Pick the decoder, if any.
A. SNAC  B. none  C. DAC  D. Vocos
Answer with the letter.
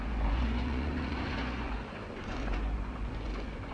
D